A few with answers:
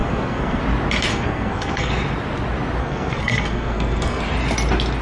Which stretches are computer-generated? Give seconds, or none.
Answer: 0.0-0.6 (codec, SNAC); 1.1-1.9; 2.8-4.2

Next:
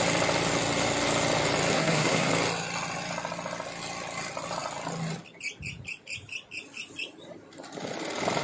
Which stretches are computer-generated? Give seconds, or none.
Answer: 1.7-2.3 (codec, SNAC)

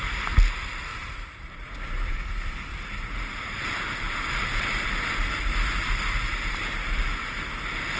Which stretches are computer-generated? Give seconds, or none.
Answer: 0.9-2.1 (vocoder, BigVGAN v2); 2.7-5.4

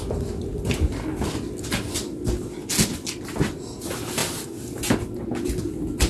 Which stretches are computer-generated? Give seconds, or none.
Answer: none

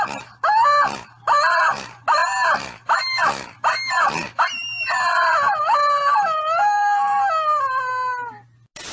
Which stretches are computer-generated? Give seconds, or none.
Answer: 6.6-7.2 (codec, SNAC)

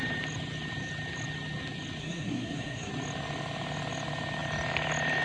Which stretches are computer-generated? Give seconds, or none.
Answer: 2.0-2.9 (codec, SNAC)

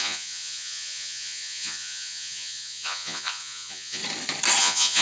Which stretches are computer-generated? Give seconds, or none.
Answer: 0.0-4.0 (vocoder, Vocos); 4.6-5.0

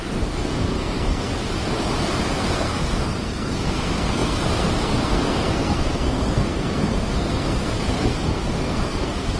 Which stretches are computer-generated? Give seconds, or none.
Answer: 0.0-1.3 (codec, SNAC); 2.3-9.4